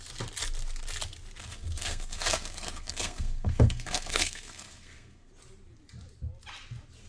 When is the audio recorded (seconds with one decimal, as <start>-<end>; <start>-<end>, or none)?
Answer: 0.0-1.4; 5.3-7.1